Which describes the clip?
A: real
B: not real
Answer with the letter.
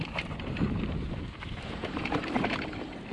B